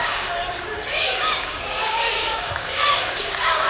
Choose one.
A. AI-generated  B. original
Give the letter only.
A